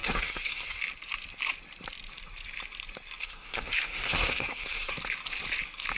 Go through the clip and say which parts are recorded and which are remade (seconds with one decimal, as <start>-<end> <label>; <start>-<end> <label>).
0.0-0.8 remade; 0.8-3.2 recorded; 3.2-4.9 remade; 4.9-6.0 recorded